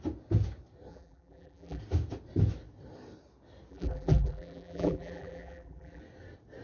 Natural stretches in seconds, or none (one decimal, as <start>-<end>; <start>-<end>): 0.0-0.9; 1.8-3.7; 6.0-6.6